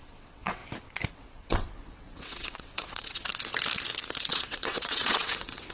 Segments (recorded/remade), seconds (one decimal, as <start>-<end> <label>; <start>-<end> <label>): 0.0-0.6 remade; 0.6-1.1 recorded; 1.1-3.3 remade; 3.3-4.3 recorded; 4.3-5.7 remade